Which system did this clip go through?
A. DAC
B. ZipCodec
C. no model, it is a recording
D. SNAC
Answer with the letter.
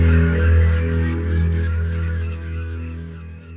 A